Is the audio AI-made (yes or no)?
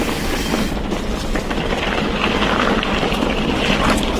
no